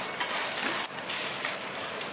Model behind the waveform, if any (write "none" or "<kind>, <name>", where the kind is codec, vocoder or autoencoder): none